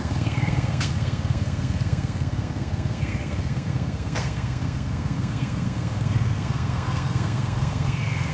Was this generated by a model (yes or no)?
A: yes